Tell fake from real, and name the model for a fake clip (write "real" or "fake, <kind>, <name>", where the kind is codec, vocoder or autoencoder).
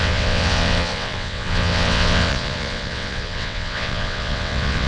fake, vocoder, WaveNeXt